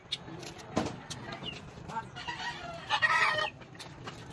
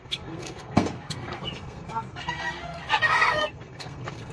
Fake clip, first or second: second